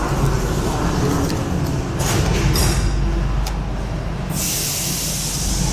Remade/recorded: recorded